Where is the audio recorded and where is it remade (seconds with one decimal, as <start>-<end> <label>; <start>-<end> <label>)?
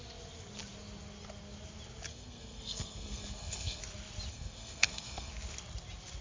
0.0-2.1 recorded; 2.1-3.8 remade; 3.8-4.3 recorded; 4.3-5.3 remade; 5.3-6.2 recorded